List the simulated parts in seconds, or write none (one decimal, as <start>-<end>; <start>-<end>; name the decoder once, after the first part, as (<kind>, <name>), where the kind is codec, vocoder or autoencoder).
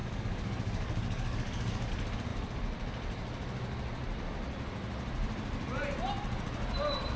0.0-1.9 (codec, DAC)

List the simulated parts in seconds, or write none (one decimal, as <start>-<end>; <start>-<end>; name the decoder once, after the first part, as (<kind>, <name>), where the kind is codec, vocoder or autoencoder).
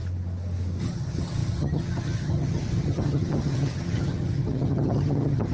0.8-5.5 (vocoder, HiFi-GAN)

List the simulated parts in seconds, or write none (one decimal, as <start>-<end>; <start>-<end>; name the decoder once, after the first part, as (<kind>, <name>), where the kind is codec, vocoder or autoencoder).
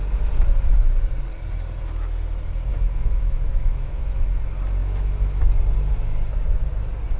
2.7-4.2 (autoencoder, DAC-VAE); 4.8-5.4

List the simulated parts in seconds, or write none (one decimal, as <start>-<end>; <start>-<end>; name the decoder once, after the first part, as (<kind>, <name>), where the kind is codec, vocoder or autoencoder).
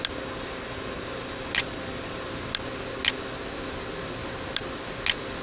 none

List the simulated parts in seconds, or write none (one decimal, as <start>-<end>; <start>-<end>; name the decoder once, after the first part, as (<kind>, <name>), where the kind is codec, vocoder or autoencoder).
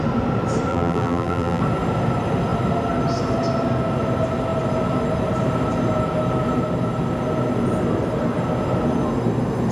0.7-1.6 (vocoder, BigVGAN v2)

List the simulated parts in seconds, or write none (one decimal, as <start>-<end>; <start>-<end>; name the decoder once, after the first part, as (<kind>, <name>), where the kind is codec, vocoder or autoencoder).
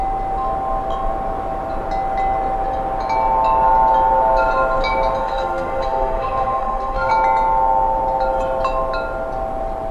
5.2-7.1 (codec, SNAC)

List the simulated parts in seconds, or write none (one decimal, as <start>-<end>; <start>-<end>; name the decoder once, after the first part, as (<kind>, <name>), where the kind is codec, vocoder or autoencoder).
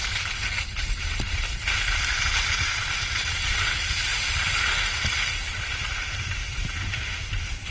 0.0-4.1 (vocoder, BigVGAN v2); 5.7-7.7